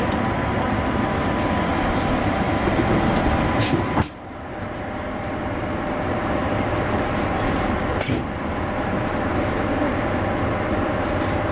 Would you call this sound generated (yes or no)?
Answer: yes